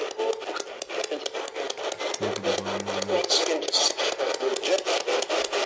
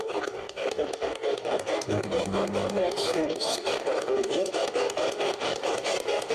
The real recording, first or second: first